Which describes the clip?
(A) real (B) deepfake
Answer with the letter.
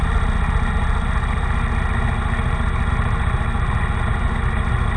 A